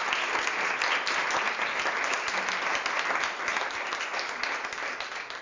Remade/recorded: recorded